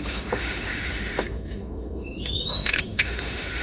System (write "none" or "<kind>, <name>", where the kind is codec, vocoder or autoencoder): autoencoder, DAC-VAE